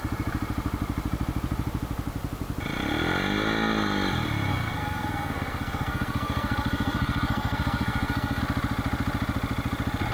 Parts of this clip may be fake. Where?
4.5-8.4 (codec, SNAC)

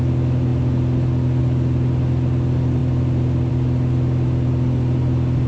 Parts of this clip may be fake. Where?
none

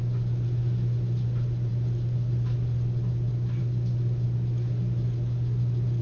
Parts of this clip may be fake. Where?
none

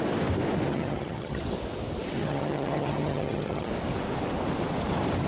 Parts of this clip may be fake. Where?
0.7-1.4 (vocoder, HiFi-GAN); 2.2-3.7

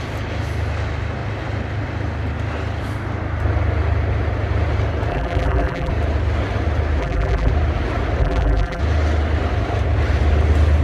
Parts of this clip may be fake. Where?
5.1-5.9 (vocoder, BigVGAN v2); 7.0-7.5; 8.2-8.8